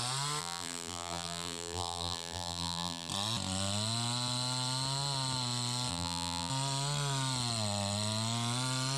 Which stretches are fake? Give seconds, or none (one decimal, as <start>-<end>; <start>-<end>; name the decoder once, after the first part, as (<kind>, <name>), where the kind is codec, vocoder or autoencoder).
0.4-3.1 (vocoder, BigVGAN v2); 5.9-6.5